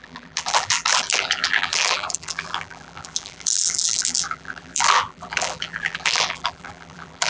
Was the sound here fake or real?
fake